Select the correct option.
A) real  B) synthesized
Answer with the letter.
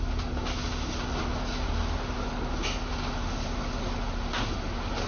A